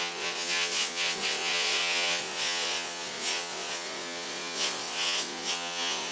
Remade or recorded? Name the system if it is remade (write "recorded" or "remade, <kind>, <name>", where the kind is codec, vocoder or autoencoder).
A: remade, vocoder, Vocos